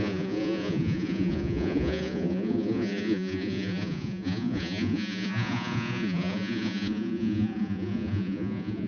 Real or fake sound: fake